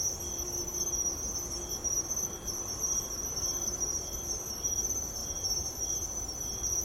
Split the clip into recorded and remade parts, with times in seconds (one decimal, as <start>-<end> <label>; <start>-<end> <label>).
0.0-0.7 remade; 0.7-1.9 recorded; 1.9-6.8 remade